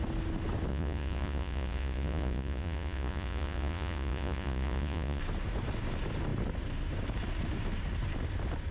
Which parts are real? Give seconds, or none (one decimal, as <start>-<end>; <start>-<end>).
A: 0.0-0.7; 5.2-8.7